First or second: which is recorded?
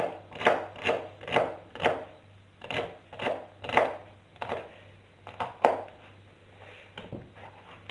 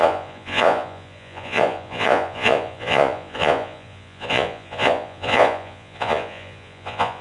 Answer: first